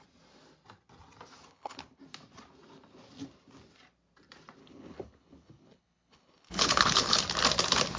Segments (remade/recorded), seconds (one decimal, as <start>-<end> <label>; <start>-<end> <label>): 0.0-1.5 recorded; 1.5-2.0 remade; 2.0-4.6 recorded; 4.6-7.2 remade; 7.2-8.0 recorded